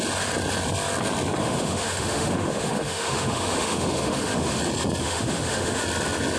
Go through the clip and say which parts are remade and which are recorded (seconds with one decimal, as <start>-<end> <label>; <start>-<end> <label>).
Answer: 0.0-1.4 recorded; 1.4-4.6 remade; 4.6-5.0 recorded; 5.0-5.8 remade; 5.8-6.4 recorded